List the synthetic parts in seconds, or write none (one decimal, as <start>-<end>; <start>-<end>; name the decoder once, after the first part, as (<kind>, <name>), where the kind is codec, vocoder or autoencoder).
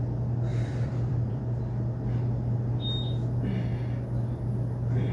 0.5-1.4 (vocoder, BigVGAN v2)